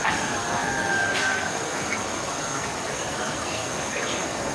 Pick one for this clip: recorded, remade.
remade